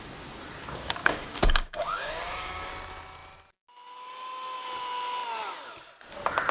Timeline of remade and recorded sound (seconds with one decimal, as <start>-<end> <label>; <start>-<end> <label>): 0.0-1.0 recorded; 1.0-2.7 remade; 2.7-6.5 recorded